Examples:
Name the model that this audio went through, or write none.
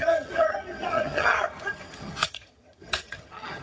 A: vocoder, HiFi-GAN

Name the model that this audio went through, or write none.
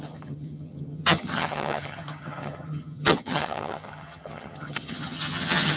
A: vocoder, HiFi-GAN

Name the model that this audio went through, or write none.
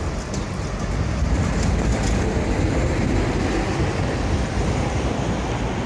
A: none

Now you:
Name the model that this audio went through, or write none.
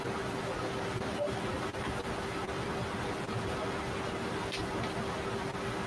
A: none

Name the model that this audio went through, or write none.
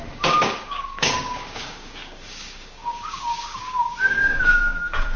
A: codec, DAC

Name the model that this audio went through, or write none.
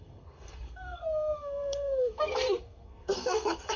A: codec, SNAC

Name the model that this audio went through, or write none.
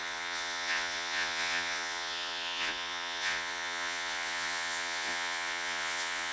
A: vocoder, Vocos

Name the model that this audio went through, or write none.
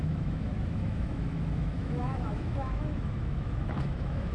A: autoencoder, DAC-VAE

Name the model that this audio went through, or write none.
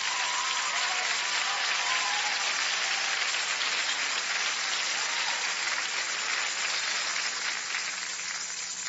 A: none